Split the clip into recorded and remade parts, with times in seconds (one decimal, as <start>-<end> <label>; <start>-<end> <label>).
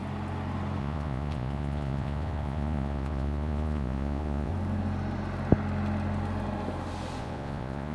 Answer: 0.0-0.8 recorded; 0.8-4.5 remade; 4.5-7.2 recorded; 7.2-7.9 remade